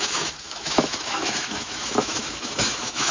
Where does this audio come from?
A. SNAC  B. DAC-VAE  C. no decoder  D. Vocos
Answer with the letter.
B